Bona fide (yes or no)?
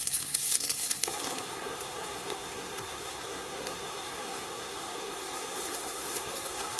no